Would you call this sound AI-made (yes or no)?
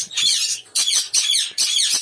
yes